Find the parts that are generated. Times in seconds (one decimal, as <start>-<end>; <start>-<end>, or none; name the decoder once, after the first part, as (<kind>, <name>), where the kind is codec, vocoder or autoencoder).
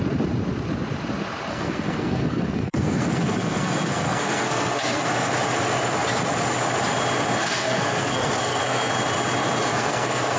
1.5-5.3 (codec, SNAC); 7.4-8.9; 9.7-10.4